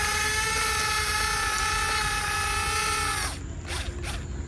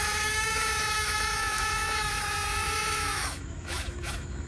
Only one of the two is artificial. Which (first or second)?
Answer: second